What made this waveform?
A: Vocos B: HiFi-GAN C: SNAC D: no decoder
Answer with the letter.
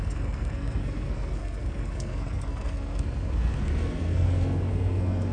C